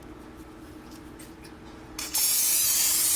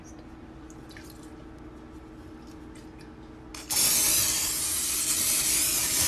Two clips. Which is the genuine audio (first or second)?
second